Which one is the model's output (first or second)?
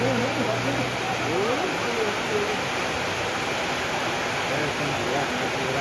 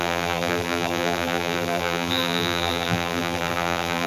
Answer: second